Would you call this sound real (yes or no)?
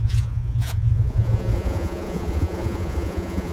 no